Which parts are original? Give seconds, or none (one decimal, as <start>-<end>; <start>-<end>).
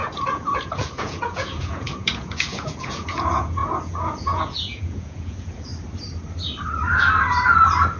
5.7-8.0